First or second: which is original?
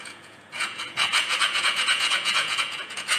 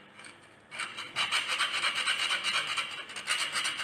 second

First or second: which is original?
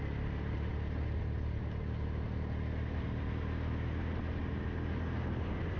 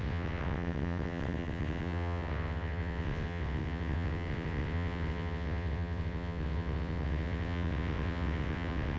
first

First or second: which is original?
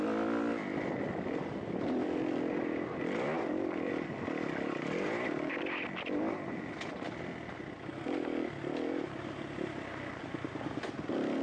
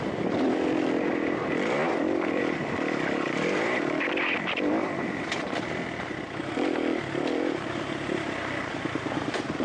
first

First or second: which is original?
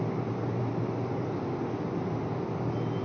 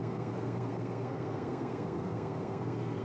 first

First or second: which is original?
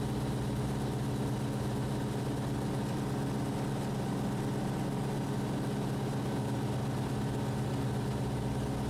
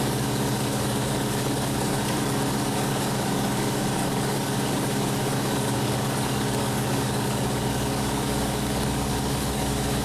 first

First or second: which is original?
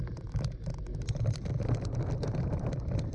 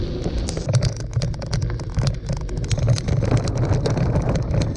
second